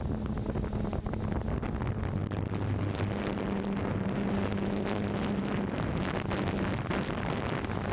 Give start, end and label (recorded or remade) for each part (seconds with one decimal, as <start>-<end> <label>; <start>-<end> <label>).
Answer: 0.0-7.9 recorded